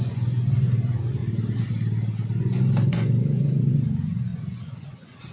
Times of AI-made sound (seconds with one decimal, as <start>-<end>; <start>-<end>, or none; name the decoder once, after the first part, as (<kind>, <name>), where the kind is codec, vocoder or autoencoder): 0.0-1.2 (vocoder, Vocos); 2.9-5.3